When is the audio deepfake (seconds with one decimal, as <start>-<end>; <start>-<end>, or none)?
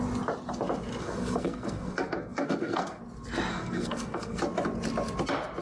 1.0-3.0; 3.5-4.4